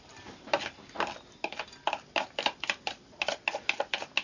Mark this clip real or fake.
real